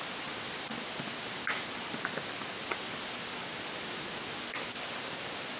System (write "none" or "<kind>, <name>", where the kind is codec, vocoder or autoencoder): none